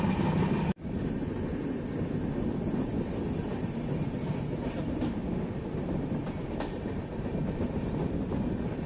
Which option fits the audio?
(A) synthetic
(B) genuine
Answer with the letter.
B